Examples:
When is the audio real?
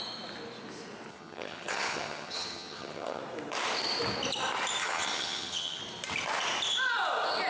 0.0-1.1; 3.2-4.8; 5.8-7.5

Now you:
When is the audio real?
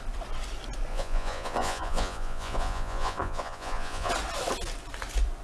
0.0-0.9; 4.1-5.4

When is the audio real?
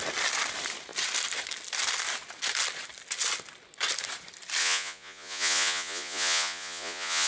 0.0-4.6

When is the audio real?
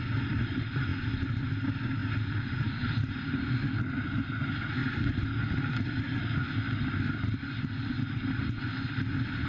0.0-9.5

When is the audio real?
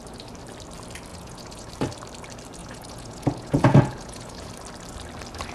0.0-1.1; 1.7-2.6; 4.5-5.5